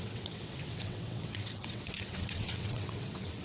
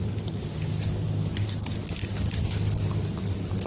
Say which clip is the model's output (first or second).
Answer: first